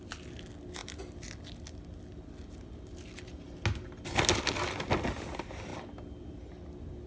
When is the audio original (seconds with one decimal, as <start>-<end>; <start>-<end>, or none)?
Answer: 0.0-7.1